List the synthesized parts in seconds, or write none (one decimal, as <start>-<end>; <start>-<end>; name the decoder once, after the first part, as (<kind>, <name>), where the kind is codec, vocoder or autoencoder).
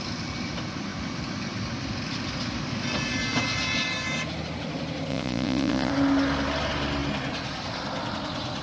5.1-5.9 (vocoder, Vocos)